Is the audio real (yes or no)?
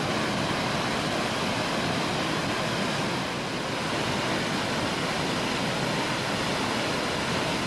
yes